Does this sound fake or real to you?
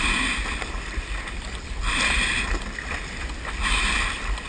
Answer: real